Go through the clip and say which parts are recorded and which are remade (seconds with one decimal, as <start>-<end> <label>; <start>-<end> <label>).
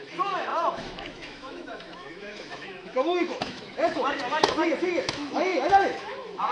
0.0-6.5 remade